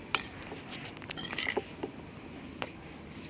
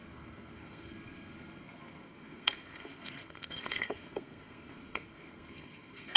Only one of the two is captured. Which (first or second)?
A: first